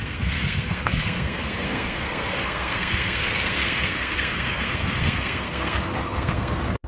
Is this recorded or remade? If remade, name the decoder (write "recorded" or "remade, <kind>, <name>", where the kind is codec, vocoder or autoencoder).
remade, codec, SNAC